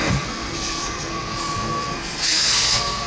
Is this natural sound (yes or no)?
no